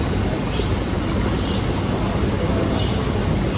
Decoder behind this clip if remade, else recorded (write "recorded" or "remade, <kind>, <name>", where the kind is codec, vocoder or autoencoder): recorded